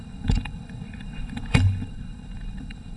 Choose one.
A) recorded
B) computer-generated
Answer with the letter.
B